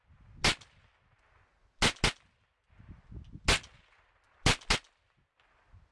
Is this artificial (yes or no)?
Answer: no